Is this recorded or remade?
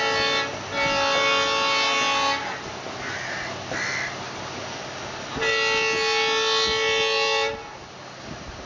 recorded